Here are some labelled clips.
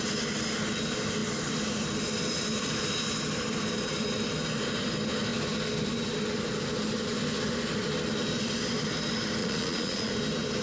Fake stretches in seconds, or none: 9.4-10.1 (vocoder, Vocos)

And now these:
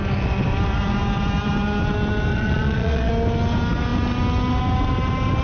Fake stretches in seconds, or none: 2.3-3.1 (vocoder, Vocos)

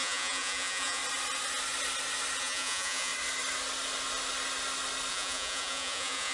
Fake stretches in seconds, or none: 0.0-1.0 (vocoder, Vocos); 2.4-3.1; 5.1-6.3